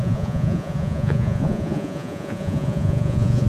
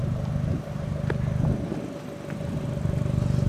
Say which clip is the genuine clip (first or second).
second